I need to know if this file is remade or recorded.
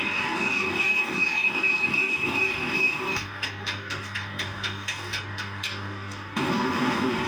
remade